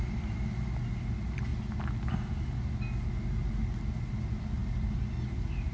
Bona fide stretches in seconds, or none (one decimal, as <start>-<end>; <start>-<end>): 0.0-5.7